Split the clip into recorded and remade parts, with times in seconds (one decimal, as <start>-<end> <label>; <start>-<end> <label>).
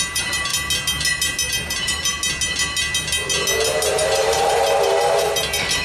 0.0-0.5 remade; 0.5-1.5 recorded; 1.5-2.1 remade; 2.1-3.9 recorded; 3.9-5.8 remade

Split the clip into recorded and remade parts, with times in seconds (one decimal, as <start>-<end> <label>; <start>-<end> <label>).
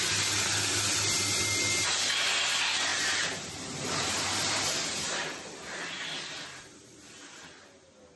0.0-2.9 recorded; 2.9-5.1 remade; 5.1-8.2 recorded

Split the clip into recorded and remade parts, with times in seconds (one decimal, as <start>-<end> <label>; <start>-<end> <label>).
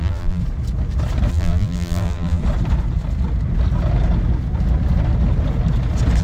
0.0-0.4 remade; 0.4-1.3 recorded; 1.3-2.4 remade; 2.4-6.2 recorded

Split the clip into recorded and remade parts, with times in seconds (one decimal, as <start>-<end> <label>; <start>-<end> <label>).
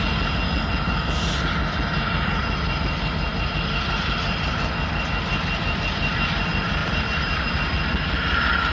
0.0-6.8 recorded; 6.8-7.5 remade; 7.5-8.7 recorded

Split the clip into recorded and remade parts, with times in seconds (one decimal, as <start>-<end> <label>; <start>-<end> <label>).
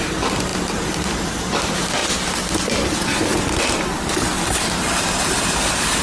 0.0-2.0 remade; 2.0-5.6 recorded; 5.6-6.0 remade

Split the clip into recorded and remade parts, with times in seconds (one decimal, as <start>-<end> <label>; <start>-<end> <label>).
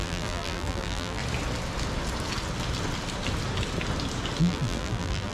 0.0-1.2 remade; 1.2-4.4 recorded; 4.4-5.3 remade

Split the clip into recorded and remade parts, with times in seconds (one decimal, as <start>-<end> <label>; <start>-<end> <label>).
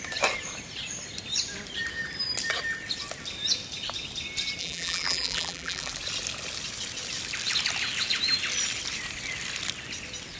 0.0-4.6 recorded; 4.6-5.9 remade; 5.9-10.4 recorded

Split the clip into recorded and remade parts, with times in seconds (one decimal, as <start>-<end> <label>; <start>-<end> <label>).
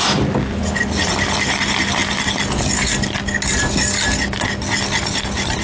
0.0-5.6 recorded